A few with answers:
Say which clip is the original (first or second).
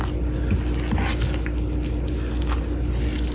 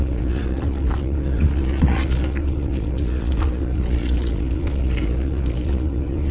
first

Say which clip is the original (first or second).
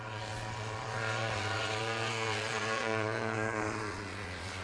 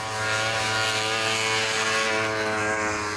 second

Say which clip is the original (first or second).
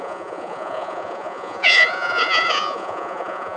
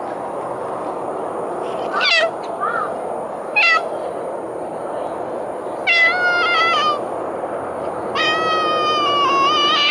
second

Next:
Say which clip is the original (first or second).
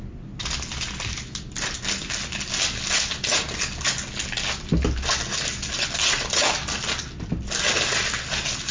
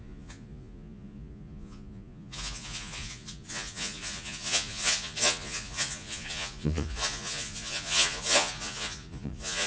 first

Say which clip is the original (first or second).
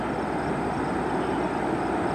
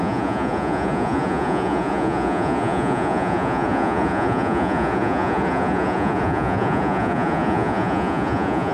first